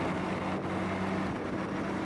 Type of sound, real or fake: real